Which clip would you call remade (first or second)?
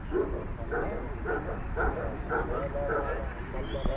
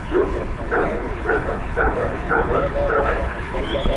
second